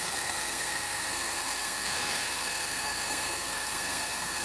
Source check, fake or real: fake